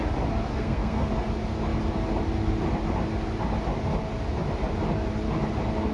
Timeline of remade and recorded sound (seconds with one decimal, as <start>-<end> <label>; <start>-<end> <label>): 0.0-0.5 recorded; 0.5-1.1 remade; 1.1-5.9 recorded